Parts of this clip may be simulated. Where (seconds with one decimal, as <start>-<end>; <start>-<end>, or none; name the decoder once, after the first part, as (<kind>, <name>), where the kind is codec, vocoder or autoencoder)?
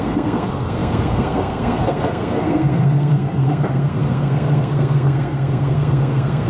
0.0-6.5 (codec, SNAC)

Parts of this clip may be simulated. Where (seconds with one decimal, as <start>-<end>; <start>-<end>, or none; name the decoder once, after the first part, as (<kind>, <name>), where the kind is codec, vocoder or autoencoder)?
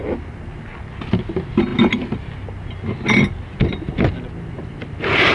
none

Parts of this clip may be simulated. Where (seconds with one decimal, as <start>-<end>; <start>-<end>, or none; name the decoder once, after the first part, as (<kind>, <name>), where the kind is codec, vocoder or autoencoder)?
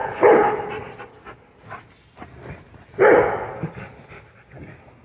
0.0-0.6 (codec, HILCodec)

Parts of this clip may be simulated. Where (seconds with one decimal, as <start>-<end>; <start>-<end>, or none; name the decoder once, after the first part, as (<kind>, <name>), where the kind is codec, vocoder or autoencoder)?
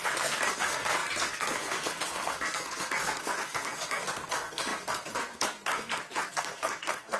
0.0-7.2 (codec, SNAC)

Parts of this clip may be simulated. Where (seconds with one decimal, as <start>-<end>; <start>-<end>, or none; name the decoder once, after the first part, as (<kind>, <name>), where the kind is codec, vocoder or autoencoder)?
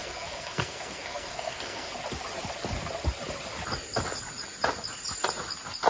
0.0-1.9 (codec, SNAC)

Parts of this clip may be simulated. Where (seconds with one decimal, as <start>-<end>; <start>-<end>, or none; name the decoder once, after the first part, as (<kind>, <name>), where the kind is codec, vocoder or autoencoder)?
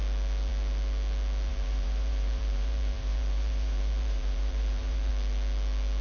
1.5-5.1 (vocoder, BigVGAN v2)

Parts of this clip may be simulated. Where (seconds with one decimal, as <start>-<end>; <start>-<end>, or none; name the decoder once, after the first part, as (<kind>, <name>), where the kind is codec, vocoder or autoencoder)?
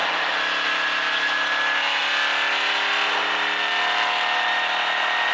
none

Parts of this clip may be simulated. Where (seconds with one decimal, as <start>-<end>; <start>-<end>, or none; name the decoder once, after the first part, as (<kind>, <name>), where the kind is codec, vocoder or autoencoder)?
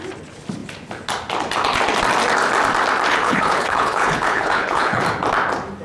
3.1-5.0 (codec, HILCodec)